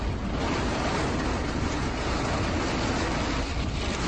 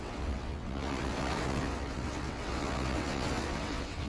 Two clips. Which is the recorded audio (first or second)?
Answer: first